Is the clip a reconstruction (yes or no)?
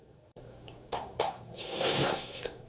yes